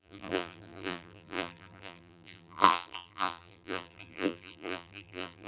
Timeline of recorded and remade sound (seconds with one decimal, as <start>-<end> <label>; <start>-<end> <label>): 0.0-5.5 remade